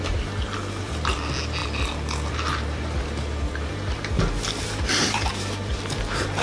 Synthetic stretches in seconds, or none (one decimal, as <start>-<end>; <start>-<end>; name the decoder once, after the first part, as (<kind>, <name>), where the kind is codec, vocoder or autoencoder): none